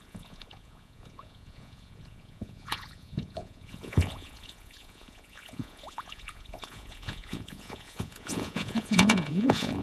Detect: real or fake fake